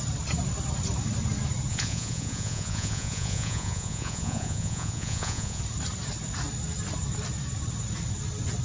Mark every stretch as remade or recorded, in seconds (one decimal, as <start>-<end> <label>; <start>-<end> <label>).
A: 0.0-1.7 recorded; 1.7-5.6 remade; 5.6-8.6 recorded